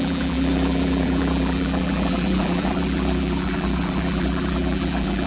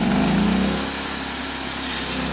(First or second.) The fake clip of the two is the first